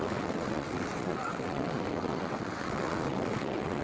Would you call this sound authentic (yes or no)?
no